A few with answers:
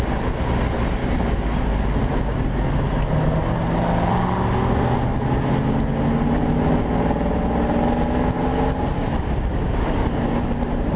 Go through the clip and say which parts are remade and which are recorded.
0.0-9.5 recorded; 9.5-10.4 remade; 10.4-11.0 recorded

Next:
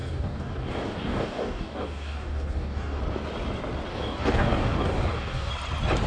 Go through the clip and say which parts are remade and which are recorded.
0.0-3.0 remade; 3.0-3.9 recorded; 3.9-5.5 remade; 5.5-6.1 recorded